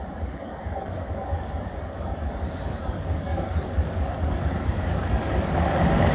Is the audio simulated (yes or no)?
yes